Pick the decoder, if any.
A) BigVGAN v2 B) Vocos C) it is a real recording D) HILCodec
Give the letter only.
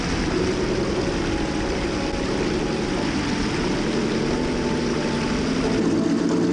C